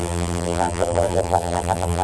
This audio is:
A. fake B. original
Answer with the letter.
A